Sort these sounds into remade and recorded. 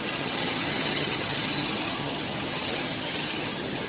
remade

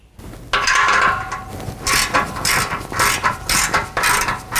recorded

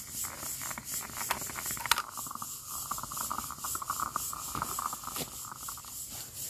recorded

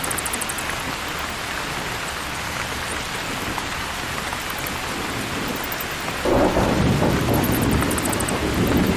recorded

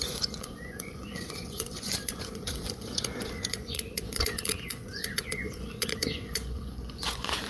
remade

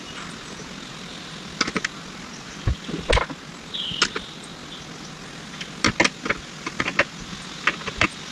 recorded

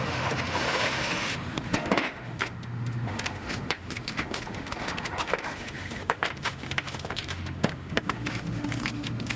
remade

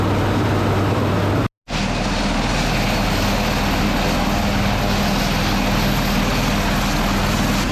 recorded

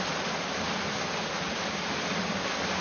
recorded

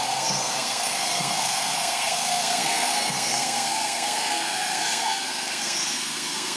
remade